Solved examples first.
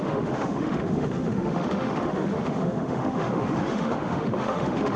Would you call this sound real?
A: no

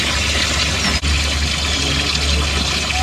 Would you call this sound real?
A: yes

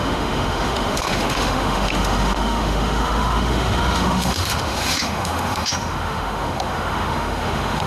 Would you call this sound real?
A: no